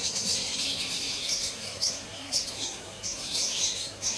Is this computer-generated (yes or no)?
yes